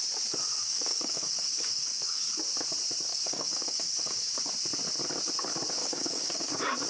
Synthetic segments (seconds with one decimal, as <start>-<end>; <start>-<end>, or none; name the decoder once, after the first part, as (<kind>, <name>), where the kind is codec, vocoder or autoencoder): 0.6-2.2 (codec, DAC); 3.1-4.3; 5.8-6.5